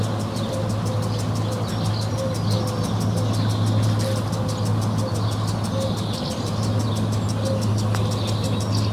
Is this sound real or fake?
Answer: real